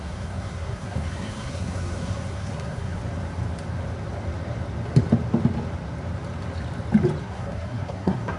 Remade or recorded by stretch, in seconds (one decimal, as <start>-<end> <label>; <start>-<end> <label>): 0.0-3.0 remade; 3.0-7.2 recorded; 7.2-8.4 remade